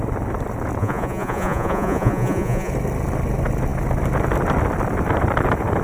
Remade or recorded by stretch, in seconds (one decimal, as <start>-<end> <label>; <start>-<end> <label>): 0.0-0.8 recorded; 0.8-2.7 remade; 2.7-5.8 recorded